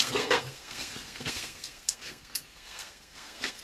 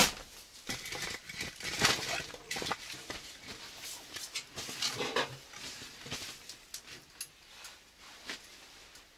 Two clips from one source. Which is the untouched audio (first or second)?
second